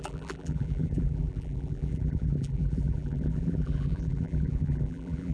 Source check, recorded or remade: remade